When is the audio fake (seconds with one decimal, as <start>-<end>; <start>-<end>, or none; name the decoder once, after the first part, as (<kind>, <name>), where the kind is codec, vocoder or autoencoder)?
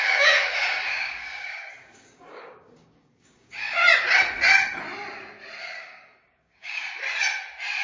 0.0-3.8 (codec, DAC); 5.6-6.8